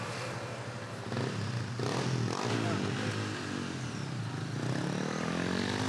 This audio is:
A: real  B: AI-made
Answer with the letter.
A